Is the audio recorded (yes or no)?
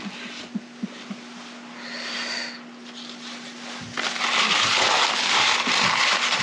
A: yes